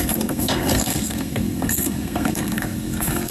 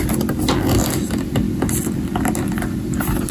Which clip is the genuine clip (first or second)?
second